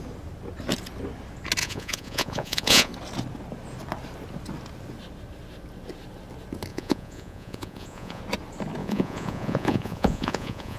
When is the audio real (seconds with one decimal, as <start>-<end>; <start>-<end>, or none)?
0.0-1.6; 2.9-6.7; 8.2-8.8

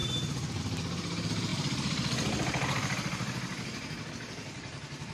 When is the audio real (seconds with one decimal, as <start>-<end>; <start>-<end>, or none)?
0.6-1.5; 4.1-5.1

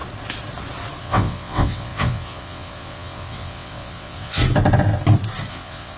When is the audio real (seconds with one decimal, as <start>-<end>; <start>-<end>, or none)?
0.0-1.0; 4.4-5.5

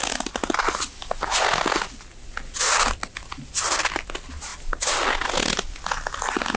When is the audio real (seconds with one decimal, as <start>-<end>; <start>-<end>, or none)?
0.0-6.6

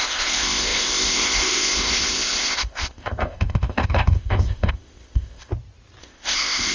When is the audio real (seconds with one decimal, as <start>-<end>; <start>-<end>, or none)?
5.5-6.0

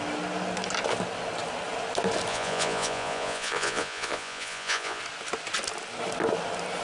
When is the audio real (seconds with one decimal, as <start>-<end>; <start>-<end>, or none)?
0.0-2.3; 5.0-6.8